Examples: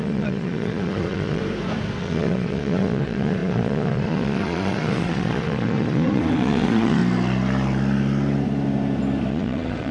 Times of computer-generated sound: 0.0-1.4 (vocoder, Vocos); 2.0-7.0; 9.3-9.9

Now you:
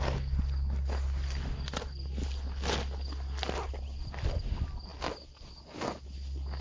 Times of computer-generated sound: none

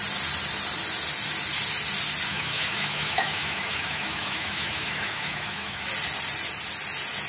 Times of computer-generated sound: 2.3-5.9 (autoencoder, DAC-VAE)